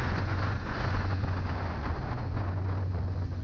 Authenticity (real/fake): fake